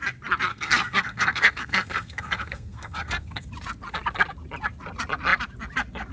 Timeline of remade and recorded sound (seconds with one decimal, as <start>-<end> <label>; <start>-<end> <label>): 0.0-0.5 recorded; 0.5-3.5 remade; 3.5-6.1 recorded